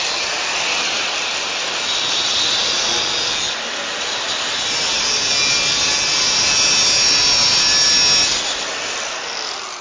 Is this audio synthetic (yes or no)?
no